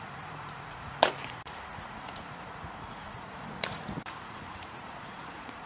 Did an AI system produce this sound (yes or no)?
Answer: yes